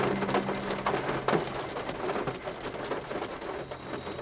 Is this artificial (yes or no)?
no